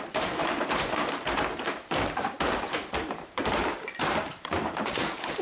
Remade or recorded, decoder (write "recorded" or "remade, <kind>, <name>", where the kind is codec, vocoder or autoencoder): remade, vocoder, BigVGAN v2